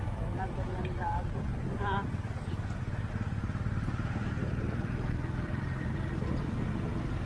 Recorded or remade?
recorded